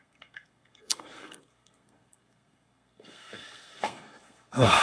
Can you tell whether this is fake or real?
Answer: fake